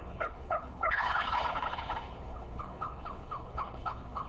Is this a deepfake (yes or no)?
yes